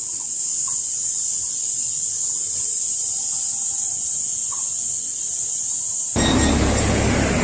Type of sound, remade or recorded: recorded